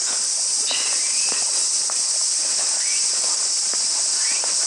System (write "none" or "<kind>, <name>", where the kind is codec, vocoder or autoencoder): none